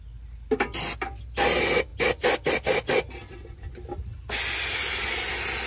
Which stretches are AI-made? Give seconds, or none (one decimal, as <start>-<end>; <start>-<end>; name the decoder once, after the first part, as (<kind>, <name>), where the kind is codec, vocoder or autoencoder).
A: none